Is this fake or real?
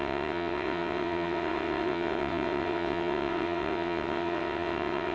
fake